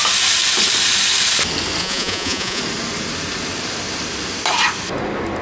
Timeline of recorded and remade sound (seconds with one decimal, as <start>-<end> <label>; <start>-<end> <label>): 0.0-1.8 recorded; 1.8-2.6 remade; 2.6-5.4 recorded